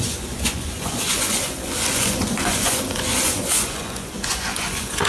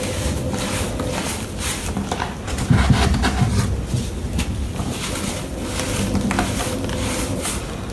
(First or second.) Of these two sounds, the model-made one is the first